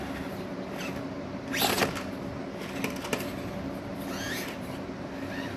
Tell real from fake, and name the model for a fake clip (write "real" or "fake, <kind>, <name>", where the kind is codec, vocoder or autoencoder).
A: real